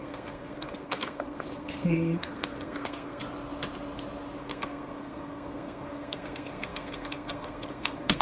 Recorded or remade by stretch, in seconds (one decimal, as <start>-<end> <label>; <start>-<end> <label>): 0.0-3.2 remade; 3.2-4.4 recorded; 4.4-8.2 remade